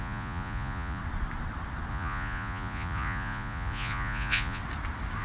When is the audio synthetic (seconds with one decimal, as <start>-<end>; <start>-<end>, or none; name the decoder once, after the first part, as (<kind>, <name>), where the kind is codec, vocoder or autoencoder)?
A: 0.0-1.0 (vocoder, Vocos); 1.9-4.6